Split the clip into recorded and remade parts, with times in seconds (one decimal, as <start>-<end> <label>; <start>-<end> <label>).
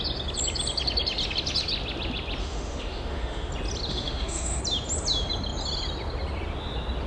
0.0-2.4 recorded; 2.4-3.5 remade; 3.5-3.9 recorded; 3.9-4.6 remade; 4.6-7.1 recorded